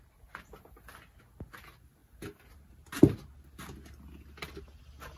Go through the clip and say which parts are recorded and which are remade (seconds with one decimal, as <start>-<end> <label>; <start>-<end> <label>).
0.0-5.2 recorded

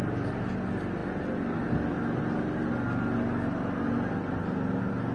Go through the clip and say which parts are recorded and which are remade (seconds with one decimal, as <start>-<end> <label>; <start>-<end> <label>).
0.0-5.1 recorded

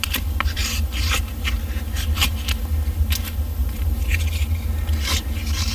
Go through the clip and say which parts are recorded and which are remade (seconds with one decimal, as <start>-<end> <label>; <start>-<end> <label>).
0.0-3.5 recorded; 3.5-4.2 remade; 4.2-5.7 recorded